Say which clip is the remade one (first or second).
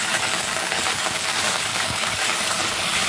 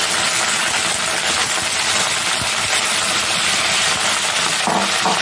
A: first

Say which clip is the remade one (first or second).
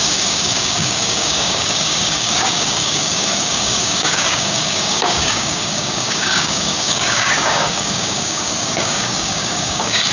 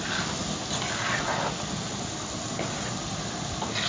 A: first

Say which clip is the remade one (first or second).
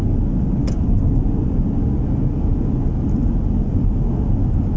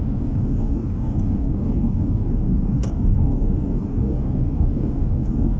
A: second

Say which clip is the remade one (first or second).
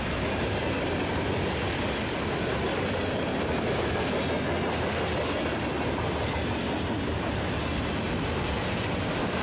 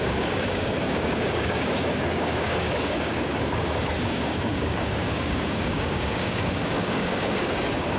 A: second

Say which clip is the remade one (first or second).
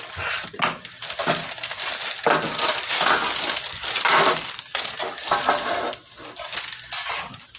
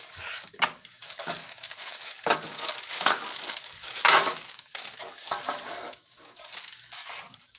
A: second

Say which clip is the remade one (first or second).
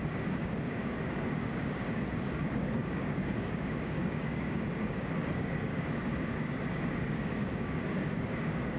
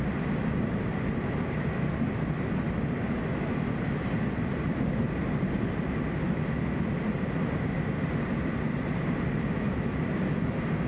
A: first